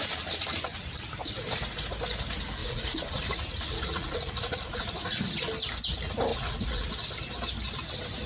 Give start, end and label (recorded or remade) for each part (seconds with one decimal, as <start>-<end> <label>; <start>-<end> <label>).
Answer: 0.0-2.6 recorded; 2.6-5.2 remade; 5.2-6.3 recorded; 6.3-6.9 remade; 6.9-8.3 recorded

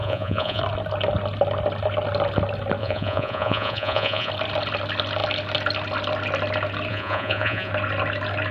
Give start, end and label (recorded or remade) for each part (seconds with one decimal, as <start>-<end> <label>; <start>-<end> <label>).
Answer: 0.0-0.6 remade; 0.6-2.8 recorded; 2.8-4.3 remade; 4.3-6.9 recorded; 6.9-7.7 remade; 7.7-8.5 recorded

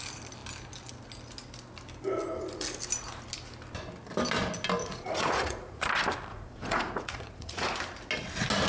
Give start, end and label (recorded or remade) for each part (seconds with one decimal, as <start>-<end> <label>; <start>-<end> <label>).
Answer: 0.0-4.8 recorded; 4.8-5.8 remade; 5.8-6.3 recorded; 6.3-7.8 remade; 7.8-8.7 recorded